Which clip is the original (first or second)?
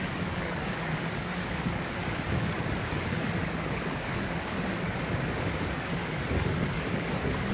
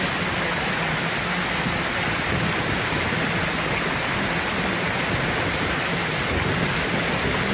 second